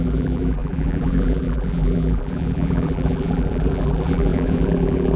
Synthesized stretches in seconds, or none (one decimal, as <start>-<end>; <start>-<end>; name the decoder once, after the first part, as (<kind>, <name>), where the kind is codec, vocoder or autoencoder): 0.0-5.2 (vocoder, BigVGAN v2)